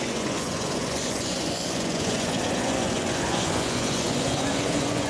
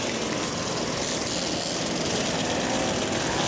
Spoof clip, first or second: first